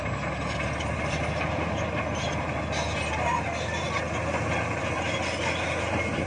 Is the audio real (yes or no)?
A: yes